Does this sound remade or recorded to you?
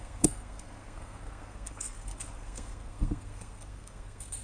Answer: remade